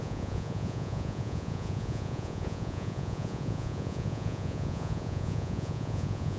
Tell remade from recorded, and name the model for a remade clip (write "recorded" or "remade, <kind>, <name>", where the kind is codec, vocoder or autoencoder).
remade, vocoder, Vocos